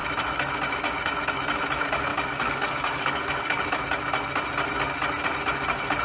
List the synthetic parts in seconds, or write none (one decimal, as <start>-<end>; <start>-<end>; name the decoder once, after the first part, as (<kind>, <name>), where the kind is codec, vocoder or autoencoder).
2.1-3.8 (codec, DAC)